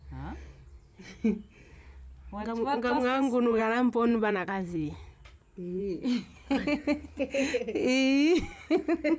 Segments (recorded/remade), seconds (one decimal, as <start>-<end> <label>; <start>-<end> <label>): 0.0-2.7 recorded; 2.7-3.6 remade; 3.6-4.1 recorded; 4.1-5.8 remade; 5.8-9.2 recorded